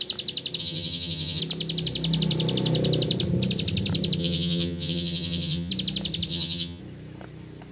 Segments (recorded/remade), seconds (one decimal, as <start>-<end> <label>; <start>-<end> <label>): 0.0-0.6 recorded; 0.6-1.4 remade; 1.4-4.2 recorded; 4.2-5.7 remade; 5.7-6.3 recorded; 6.3-6.8 remade; 6.8-7.7 recorded